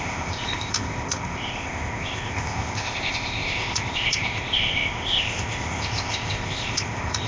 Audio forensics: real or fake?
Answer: fake